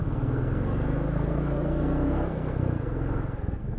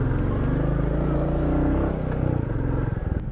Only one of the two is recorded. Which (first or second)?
second